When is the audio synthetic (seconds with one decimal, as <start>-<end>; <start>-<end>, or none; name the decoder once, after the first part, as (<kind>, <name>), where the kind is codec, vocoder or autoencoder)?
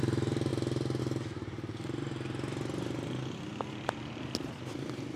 none